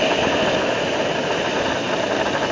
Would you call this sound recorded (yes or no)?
no